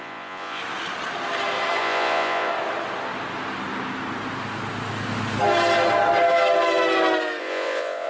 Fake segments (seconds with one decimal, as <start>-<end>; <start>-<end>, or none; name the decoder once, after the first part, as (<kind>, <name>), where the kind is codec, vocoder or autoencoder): 0.0-0.6 (vocoder, Vocos); 1.8-2.5; 7.4-8.1